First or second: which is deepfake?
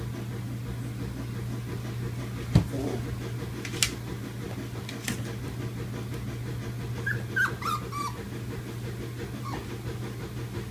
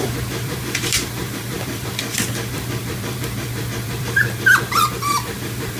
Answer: second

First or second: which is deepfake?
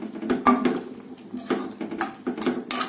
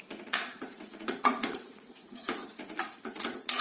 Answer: second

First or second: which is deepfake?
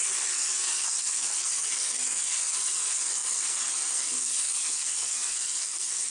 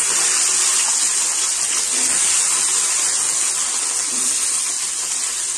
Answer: first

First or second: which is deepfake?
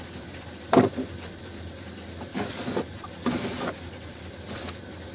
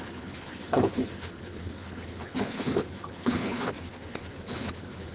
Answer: second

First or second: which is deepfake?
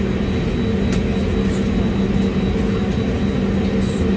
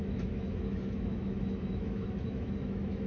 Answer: second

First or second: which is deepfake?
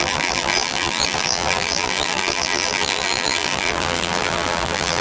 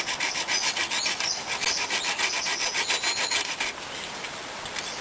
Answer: first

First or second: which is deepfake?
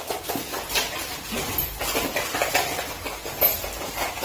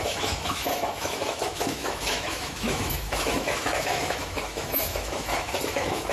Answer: second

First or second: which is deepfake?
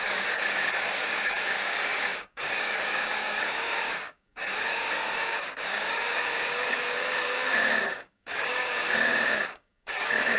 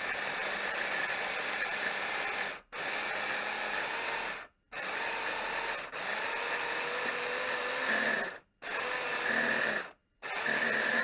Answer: first